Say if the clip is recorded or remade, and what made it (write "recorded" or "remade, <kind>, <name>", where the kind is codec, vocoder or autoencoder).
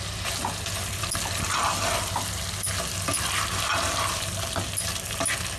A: recorded